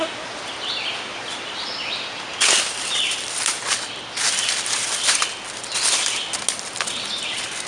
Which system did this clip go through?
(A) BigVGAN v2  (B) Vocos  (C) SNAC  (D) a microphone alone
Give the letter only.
D